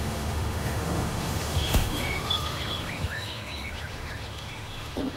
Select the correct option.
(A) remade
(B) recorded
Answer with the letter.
A